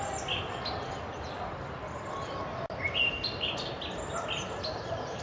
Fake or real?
real